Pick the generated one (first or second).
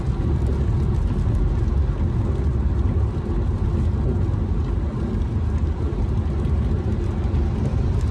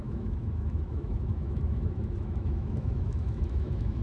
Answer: second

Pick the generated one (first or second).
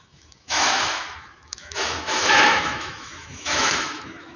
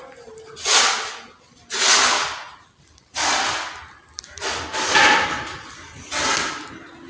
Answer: first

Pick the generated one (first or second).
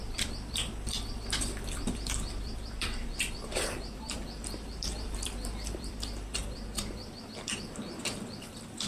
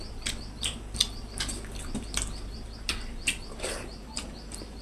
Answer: first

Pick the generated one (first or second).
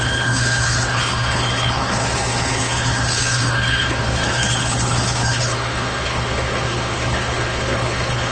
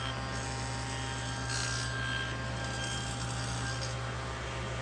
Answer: first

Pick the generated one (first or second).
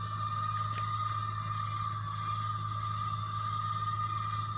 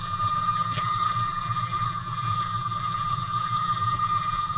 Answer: second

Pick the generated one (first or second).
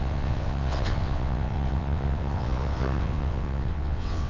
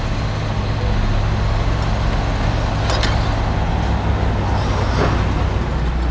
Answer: first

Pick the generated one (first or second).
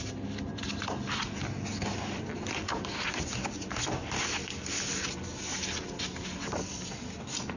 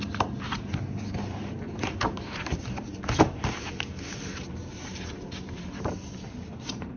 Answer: second